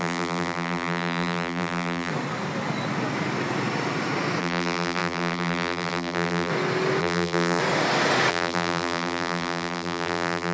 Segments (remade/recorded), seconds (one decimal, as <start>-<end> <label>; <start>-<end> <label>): 0.0-2.1 remade; 2.1-4.4 recorded; 4.4-6.5 remade; 6.5-7.0 recorded; 7.0-7.6 remade; 7.6-8.3 recorded; 8.3-10.5 remade